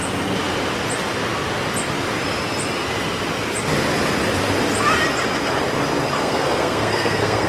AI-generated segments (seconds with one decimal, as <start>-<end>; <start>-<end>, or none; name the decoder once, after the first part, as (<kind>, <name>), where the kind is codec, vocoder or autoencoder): 6.2-7.5 (codec, SNAC)